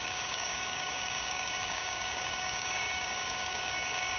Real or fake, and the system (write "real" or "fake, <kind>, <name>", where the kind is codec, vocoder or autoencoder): fake, codec, DAC